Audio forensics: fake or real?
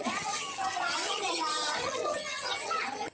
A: fake